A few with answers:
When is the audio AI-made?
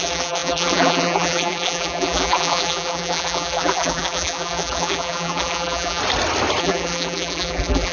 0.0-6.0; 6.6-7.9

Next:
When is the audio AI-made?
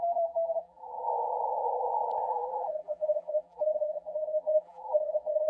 0.0-0.9; 2.3-5.5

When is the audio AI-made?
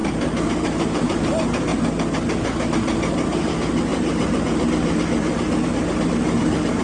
0.5-1.7; 2.7-3.9